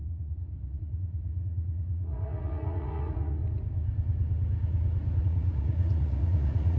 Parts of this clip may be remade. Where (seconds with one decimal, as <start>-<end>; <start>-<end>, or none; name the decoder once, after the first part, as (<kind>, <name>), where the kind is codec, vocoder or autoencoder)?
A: 0.0-3.4 (vocoder, Vocos); 5.2-6.8